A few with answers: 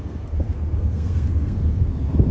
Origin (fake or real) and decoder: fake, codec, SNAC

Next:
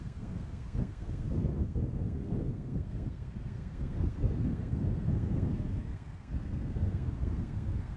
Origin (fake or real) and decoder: fake, codec, SNAC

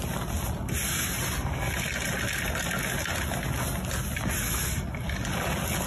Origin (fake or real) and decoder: real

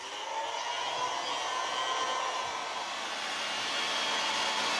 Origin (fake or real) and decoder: real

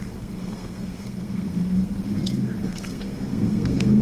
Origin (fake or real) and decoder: fake, codec, SNAC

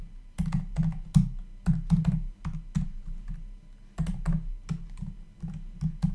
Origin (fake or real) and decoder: real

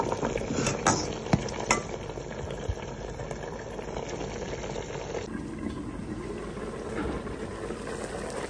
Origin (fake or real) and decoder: real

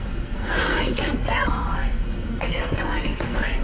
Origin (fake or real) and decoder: fake, codec, SNAC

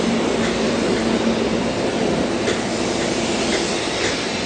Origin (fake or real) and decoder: real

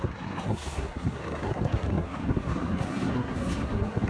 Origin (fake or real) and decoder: fake, codec, SNAC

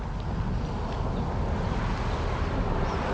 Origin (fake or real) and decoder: real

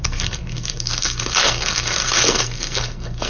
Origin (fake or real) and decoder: fake, codec, SNAC